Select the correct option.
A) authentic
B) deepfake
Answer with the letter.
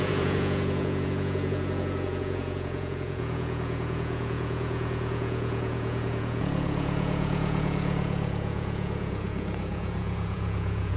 B